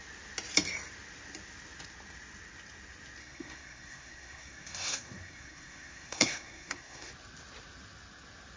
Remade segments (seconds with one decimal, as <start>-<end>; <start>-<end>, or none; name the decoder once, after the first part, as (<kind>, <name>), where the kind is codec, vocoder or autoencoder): 3.2-7.1 (codec, SNAC)